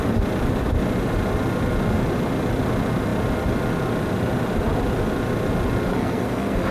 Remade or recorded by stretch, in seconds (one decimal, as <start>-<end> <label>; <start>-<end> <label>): 0.0-5.9 recorded; 5.9-6.7 remade